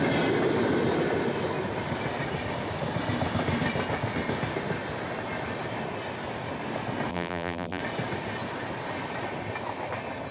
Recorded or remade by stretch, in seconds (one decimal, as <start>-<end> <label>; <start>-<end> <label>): 0.0-7.1 recorded; 7.1-7.8 remade; 7.8-10.3 recorded